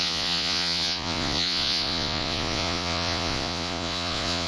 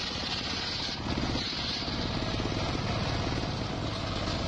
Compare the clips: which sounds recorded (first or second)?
second